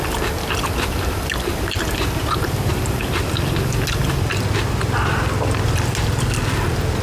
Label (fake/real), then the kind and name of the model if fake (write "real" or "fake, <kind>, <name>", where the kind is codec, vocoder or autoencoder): real